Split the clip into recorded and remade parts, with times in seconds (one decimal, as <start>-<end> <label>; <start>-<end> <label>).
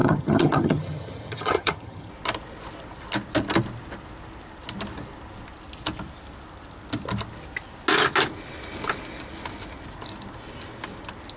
0.0-2.1 remade; 2.1-11.4 recorded